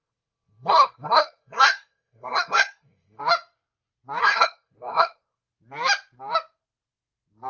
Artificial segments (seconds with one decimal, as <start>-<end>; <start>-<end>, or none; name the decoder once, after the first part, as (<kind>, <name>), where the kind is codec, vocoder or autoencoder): 0.0-3.2 (codec, SNAC); 4.2-5.5